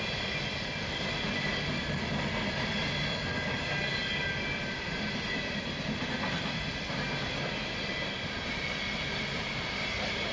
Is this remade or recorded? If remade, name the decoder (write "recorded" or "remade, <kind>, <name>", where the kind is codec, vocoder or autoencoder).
recorded